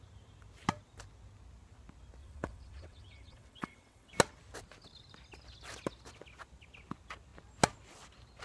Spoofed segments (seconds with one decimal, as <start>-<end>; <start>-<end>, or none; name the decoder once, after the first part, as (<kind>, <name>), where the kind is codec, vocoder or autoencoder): 2.2-4.1 (vocoder, WaveNeXt)